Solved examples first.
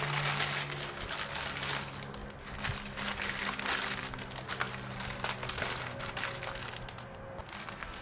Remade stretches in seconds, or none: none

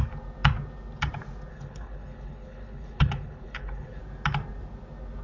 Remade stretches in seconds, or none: 1.5-4.0 (codec, HILCodec)

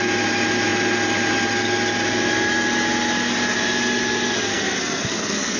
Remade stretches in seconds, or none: 4.5-5.6 (codec, SNAC)

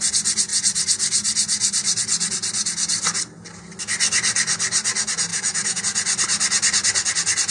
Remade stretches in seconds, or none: 5.3-5.8 (autoencoder, DAC-VAE)